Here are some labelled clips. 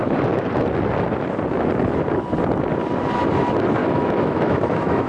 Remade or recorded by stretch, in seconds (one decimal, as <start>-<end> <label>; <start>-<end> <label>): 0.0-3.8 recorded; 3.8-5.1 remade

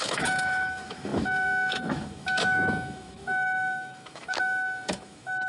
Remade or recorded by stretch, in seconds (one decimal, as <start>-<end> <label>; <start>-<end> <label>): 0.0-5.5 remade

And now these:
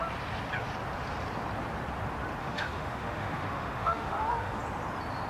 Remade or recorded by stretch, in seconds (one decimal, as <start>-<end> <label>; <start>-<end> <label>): 0.0-2.4 recorded; 2.4-4.6 remade; 4.6-5.3 recorded

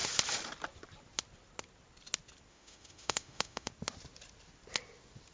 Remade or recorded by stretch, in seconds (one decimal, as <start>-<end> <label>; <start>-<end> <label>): 0.0-2.5 recorded; 2.5-3.7 remade; 3.7-5.3 recorded

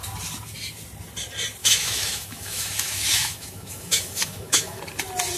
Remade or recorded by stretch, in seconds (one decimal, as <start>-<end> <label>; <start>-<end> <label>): 0.0-1.6 recorded; 1.6-4.8 remade; 4.8-5.4 recorded